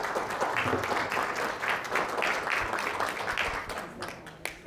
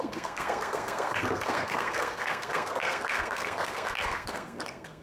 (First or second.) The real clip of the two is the first